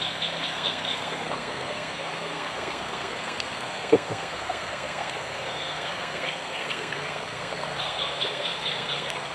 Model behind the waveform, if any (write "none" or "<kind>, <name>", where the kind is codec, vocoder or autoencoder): codec, SNAC